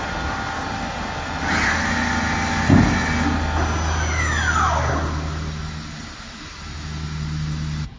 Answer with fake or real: real